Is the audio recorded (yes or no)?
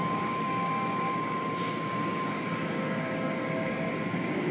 no